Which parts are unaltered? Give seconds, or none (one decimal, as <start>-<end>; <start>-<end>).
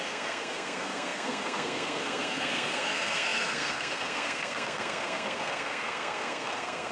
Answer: none